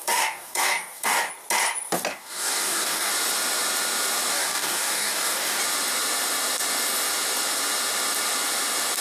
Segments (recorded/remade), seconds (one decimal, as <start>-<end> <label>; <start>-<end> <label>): 0.0-1.3 remade; 1.3-2.1 recorded; 2.1-3.1 remade; 3.1-4.3 recorded; 4.3-5.6 remade; 5.6-9.0 recorded